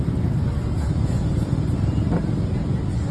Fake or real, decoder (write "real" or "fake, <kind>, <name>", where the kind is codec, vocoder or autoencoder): real